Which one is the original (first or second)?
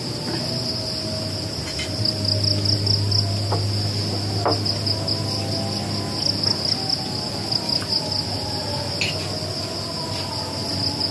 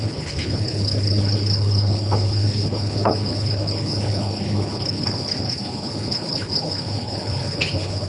first